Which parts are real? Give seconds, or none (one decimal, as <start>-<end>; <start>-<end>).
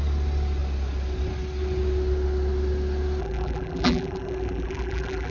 0.0-3.2